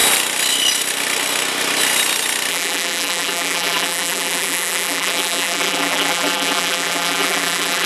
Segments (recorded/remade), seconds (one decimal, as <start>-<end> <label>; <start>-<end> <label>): 0.0-2.5 recorded; 2.5-7.9 remade

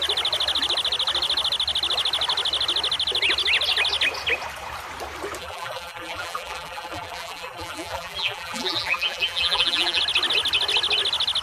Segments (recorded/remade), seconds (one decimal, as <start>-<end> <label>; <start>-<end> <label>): 0.0-5.4 recorded; 5.4-10.0 remade; 10.0-11.4 recorded

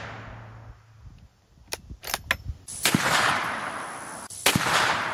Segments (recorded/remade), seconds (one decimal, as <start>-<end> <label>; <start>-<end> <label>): 0.0-1.6 recorded; 1.6-2.2 remade; 2.2-2.7 recorded; 2.7-3.3 remade; 3.3-5.1 recorded

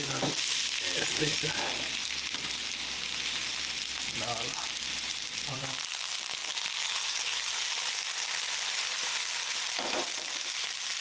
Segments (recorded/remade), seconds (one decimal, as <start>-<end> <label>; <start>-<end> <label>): 0.0-6.4 remade; 6.4-8.8 recorded; 8.8-11.0 remade

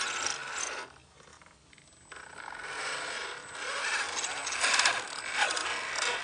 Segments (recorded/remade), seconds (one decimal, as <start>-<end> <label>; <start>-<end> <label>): 0.0-6.2 recorded